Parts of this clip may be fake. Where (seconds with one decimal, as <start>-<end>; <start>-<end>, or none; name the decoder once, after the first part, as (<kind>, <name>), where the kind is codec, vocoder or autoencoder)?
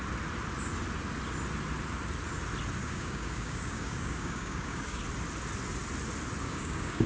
2.8-5.0 (codec, DAC); 6.4-7.1